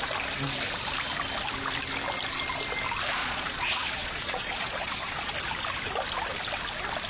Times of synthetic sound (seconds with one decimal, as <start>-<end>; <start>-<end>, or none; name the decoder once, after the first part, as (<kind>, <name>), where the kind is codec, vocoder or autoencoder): 3.2-5.3 (vocoder, Vocos)